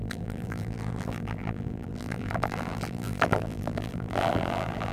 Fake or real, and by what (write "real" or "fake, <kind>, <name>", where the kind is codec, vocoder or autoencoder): fake, vocoder, BigVGAN v2